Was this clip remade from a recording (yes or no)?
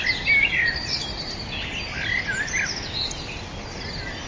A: no